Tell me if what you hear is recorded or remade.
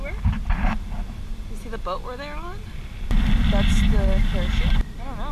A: recorded